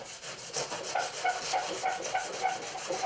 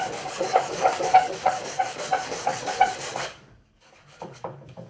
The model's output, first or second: second